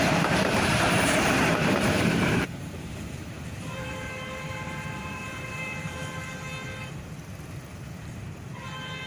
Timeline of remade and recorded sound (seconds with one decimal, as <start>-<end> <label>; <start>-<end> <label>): 0.0-6.0 remade; 6.0-8.0 recorded; 8.0-9.1 remade